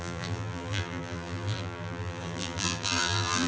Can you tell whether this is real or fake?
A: fake